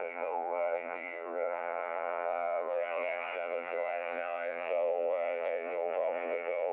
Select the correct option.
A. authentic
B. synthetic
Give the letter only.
B